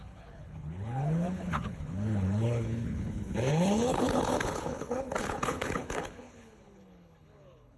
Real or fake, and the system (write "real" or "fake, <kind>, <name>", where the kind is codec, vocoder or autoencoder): fake, codec, HILCodec